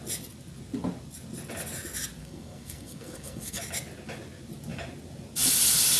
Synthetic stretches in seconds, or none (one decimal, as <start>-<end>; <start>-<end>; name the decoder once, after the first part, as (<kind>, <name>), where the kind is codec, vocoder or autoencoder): 2.2-3.6 (codec, SNAC)